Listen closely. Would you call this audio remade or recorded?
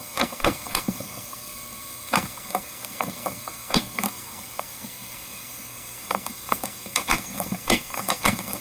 remade